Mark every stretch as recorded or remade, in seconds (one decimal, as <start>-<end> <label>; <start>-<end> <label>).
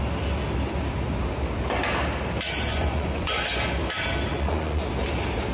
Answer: 0.0-2.7 recorded; 2.7-3.6 remade; 3.6-4.3 recorded; 4.3-4.9 remade; 4.9-5.5 recorded